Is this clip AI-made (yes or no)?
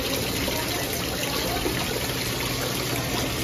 no